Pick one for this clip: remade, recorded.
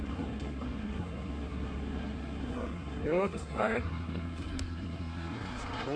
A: remade